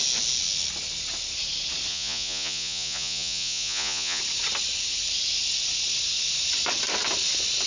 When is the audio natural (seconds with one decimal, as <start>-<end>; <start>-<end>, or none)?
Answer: 0.0-1.9; 4.2-7.7